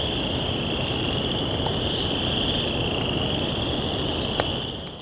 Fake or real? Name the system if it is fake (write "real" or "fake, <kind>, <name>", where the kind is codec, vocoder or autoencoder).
real